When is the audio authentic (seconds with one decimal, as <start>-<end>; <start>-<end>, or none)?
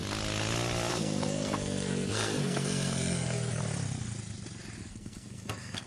0.0-0.9; 3.6-4.8